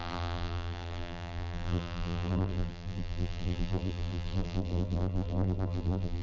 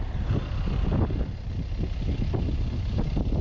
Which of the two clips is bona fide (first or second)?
second